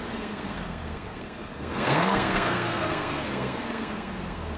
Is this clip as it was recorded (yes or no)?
no